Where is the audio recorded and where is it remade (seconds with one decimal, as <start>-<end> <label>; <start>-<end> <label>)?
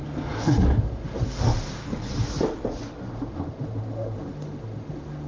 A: 0.0-0.8 recorded; 0.8-1.8 remade; 1.8-3.1 recorded; 3.1-5.3 remade